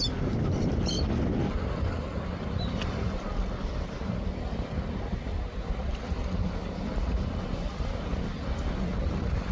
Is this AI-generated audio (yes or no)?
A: no